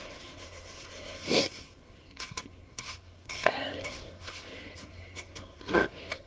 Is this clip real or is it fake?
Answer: fake